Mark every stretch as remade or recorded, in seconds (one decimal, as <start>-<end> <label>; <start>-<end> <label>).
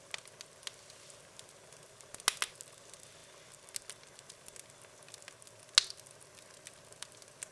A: 0.0-7.5 recorded